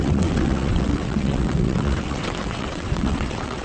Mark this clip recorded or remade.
remade